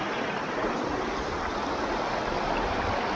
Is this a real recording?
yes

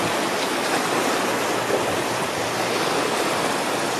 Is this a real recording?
yes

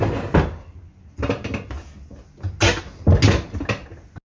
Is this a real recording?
yes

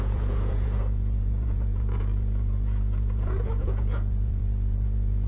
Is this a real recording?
no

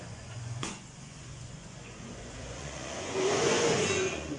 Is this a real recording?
no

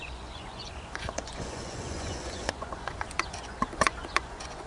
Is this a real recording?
no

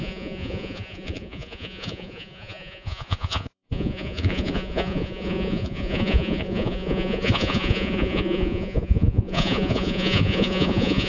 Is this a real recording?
no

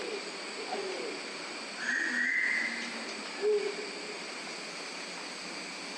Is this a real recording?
yes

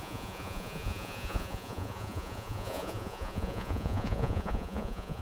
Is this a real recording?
no